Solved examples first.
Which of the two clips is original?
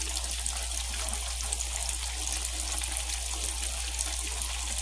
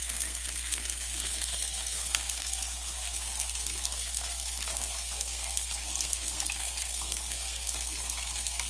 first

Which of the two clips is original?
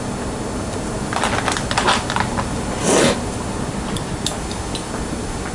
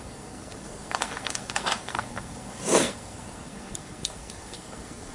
first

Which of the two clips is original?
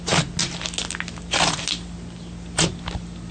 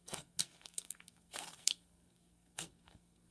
first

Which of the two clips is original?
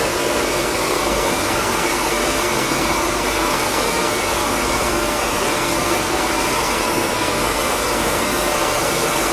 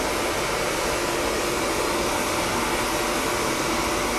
second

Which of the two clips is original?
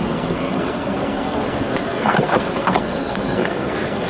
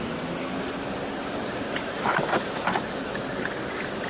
second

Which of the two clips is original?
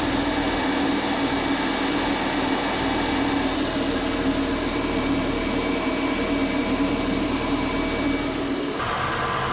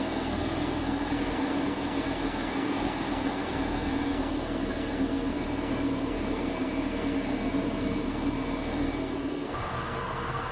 first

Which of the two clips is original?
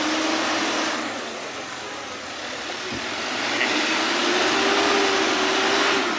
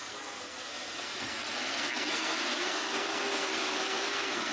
first